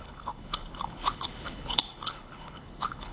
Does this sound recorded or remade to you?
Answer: remade